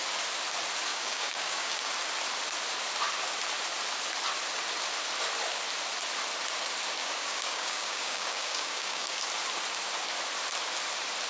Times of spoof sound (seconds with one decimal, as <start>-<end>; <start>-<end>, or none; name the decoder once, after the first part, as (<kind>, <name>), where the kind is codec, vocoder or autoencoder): 0.9-1.9 (codec, DAC); 7.0-9.2